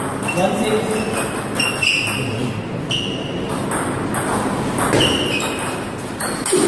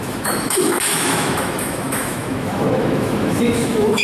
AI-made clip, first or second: second